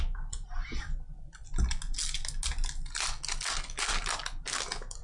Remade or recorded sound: recorded